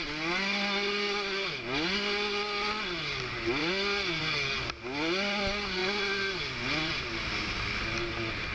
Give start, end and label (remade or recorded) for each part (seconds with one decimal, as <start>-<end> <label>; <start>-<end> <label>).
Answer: 0.0-8.5 recorded